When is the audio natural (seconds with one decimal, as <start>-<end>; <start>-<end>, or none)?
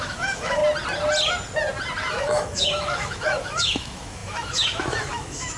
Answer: 0.6-2.1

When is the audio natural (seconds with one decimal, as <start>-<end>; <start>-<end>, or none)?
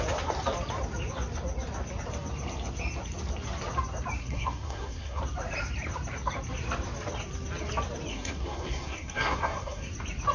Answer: 0.0-4.2; 5.2-8.1; 9.9-10.3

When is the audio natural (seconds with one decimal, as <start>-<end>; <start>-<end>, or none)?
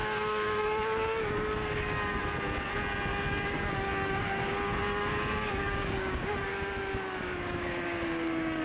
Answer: 2.2-3.1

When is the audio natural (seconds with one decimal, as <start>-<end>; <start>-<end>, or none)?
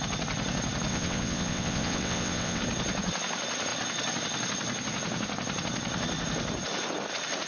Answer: 0.0-0.9; 2.6-7.5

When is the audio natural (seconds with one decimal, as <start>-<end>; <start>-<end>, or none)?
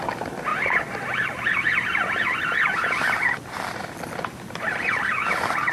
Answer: 0.0-0.5; 3.9-5.7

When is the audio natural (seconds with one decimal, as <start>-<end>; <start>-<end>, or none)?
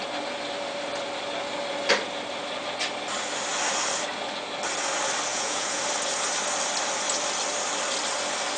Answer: 0.0-5.3; 5.8-8.6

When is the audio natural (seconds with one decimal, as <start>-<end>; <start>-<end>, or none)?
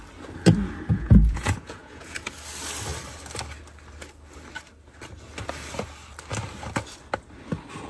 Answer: 0.0-0.9; 2.3-7.9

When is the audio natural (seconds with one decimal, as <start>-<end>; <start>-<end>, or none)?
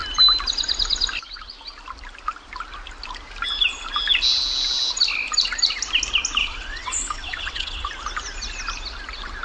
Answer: 0.0-6.4; 7.9-9.4